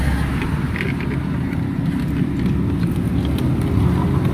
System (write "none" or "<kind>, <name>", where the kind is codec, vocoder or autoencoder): none